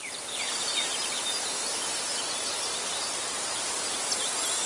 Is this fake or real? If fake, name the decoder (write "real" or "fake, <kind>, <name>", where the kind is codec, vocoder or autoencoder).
real